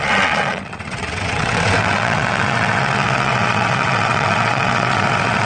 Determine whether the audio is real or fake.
fake